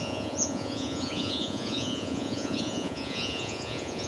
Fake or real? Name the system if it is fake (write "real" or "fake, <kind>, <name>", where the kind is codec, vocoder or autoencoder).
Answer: fake, vocoder, Vocos